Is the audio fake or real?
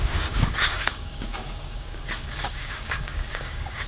fake